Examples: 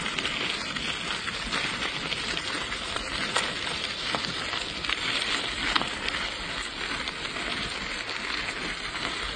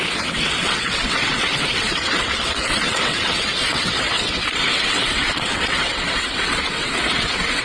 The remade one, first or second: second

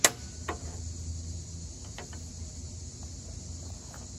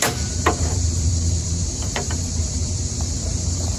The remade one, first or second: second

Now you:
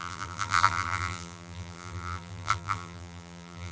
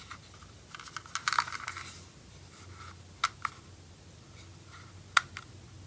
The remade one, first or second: first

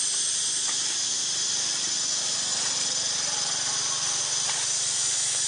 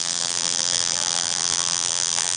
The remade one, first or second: second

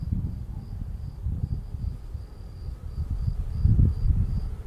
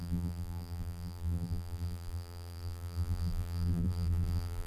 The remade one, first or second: second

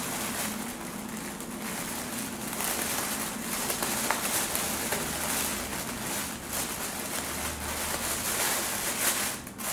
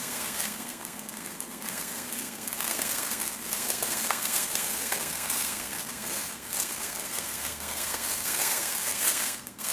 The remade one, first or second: second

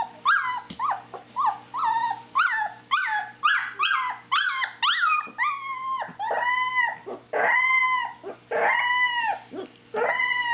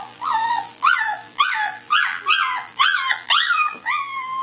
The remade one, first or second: second